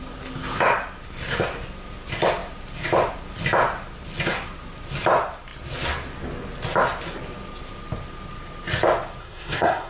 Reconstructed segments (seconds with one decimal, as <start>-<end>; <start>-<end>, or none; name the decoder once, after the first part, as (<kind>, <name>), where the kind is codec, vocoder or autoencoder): 9.2-9.9 (codec, SNAC)